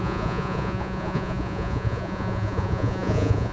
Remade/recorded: remade